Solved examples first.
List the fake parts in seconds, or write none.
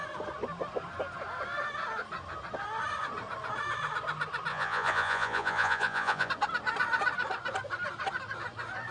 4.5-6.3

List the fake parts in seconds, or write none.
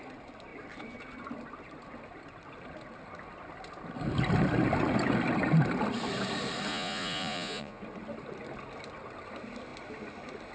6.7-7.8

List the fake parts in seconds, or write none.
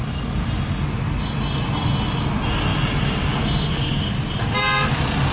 none